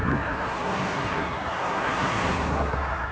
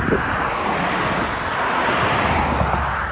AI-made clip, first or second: first